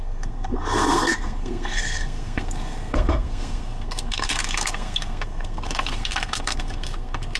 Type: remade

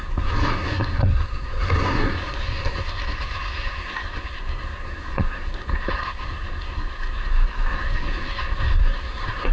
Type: remade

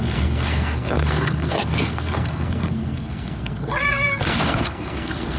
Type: remade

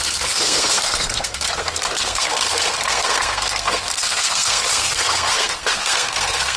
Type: remade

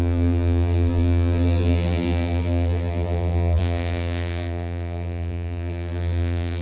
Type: remade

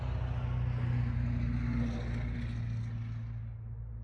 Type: recorded